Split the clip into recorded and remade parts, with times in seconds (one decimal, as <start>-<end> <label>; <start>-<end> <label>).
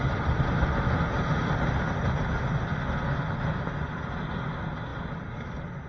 0.0-5.9 recorded